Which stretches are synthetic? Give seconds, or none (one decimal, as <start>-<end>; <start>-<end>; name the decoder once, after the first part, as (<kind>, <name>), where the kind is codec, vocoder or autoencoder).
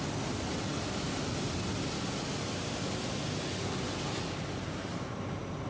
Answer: none